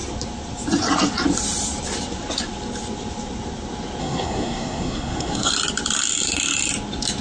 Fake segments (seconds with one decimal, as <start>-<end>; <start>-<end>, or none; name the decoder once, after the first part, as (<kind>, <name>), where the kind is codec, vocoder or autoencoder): 4.0-5.5 (codec, SNAC)